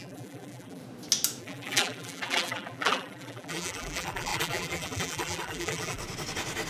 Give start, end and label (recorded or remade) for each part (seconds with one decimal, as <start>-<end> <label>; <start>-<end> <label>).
0.0-0.8 remade; 0.8-1.4 recorded; 1.4-6.0 remade; 6.0-6.7 recorded

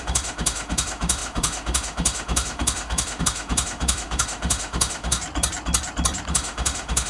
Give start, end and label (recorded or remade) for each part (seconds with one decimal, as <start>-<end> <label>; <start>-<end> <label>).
0.0-5.2 remade; 5.2-6.3 recorded; 6.3-7.1 remade

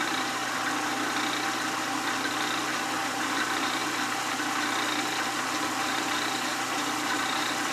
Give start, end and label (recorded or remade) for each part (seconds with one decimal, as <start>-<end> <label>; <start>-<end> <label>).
0.0-0.4 remade; 0.4-2.7 recorded; 2.7-3.8 remade; 3.8-5.8 recorded; 5.8-7.7 remade

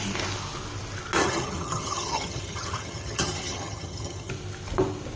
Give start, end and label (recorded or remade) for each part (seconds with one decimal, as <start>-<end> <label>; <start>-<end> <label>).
0.0-1.2 recorded; 1.2-4.3 remade; 4.3-5.2 recorded